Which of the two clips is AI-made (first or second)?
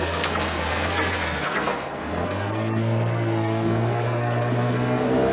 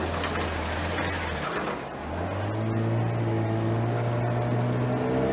first